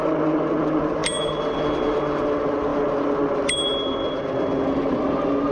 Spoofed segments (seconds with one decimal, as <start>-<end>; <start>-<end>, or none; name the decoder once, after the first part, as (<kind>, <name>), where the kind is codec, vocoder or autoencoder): none